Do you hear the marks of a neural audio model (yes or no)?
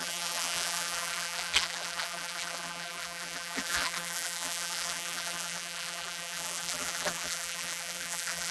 yes